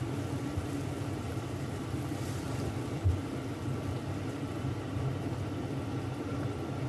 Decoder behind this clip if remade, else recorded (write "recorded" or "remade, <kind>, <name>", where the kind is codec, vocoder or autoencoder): remade, vocoder, BigVGAN v2